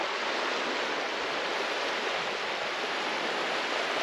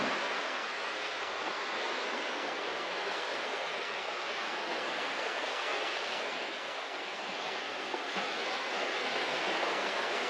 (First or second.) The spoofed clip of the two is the second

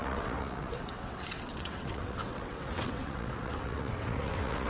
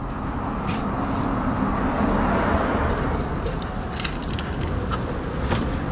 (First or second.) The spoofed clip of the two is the first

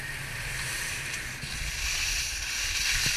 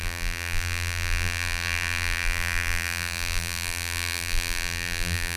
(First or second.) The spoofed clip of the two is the second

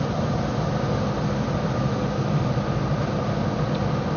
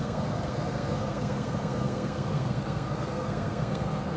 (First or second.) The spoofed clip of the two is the second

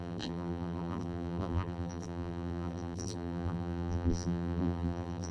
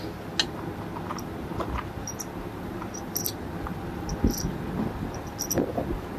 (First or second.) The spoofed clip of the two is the first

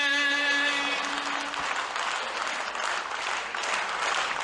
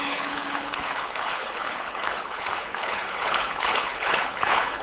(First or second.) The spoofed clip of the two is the second